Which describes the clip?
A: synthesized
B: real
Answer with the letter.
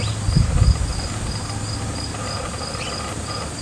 B